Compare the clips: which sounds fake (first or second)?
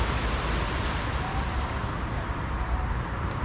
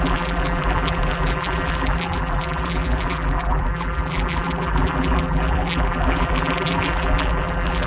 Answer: second